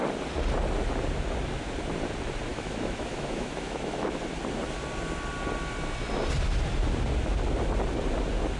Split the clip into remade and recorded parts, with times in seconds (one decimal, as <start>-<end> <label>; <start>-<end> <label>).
0.0-2.5 recorded; 2.5-4.2 remade; 4.2-8.6 recorded